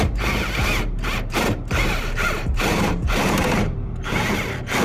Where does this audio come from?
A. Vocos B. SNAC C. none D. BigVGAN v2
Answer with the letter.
D